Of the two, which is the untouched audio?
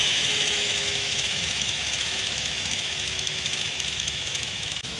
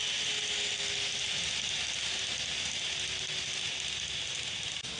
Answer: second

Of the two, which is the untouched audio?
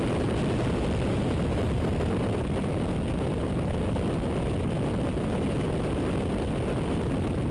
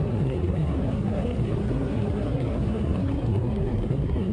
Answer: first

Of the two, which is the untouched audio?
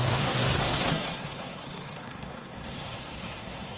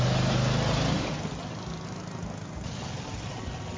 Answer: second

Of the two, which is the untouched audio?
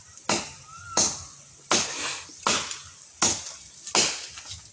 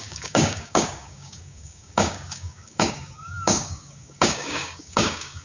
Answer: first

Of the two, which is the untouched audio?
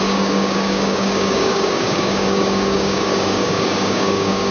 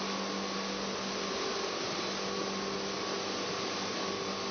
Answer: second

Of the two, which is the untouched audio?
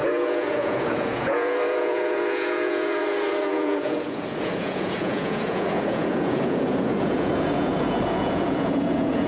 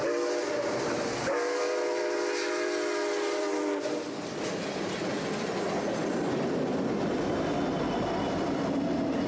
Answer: second